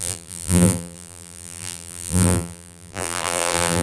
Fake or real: fake